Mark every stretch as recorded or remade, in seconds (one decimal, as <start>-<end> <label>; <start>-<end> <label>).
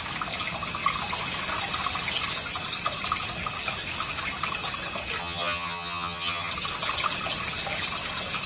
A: 0.0-5.2 recorded; 5.2-6.5 remade; 6.5-8.5 recorded